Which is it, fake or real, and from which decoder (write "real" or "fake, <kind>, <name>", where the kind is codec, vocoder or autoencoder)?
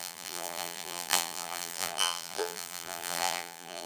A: fake, vocoder, BigVGAN v2